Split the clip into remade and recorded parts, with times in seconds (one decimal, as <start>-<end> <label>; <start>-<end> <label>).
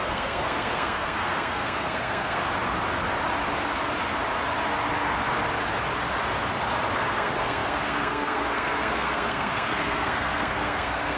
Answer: 0.0-2.4 remade; 2.4-7.1 recorded; 7.1-11.2 remade